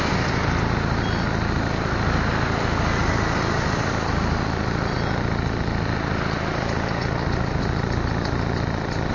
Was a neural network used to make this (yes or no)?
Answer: yes